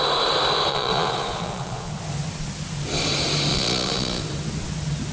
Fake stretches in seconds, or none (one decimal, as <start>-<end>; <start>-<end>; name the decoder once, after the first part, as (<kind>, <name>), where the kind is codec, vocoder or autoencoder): 0.7-1.9 (vocoder, Vocos); 3.5-4.2